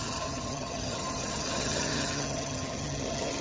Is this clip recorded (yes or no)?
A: no